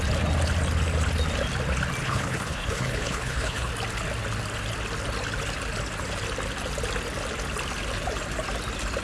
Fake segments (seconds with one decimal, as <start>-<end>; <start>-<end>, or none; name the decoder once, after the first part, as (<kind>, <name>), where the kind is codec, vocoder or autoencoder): 2.0-3.7 (codec, HILCodec)